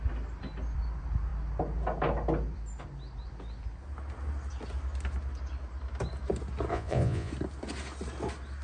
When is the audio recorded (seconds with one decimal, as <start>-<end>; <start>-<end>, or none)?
0.0-6.7; 7.3-8.6